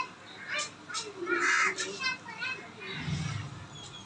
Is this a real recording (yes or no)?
yes